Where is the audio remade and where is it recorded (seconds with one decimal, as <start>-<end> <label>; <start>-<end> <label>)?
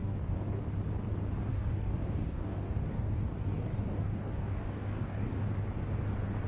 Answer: 0.0-0.6 remade; 0.6-1.5 recorded; 1.5-5.4 remade; 5.4-6.5 recorded